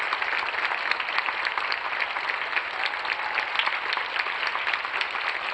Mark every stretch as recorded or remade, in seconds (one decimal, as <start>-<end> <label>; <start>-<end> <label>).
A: 0.0-5.5 recorded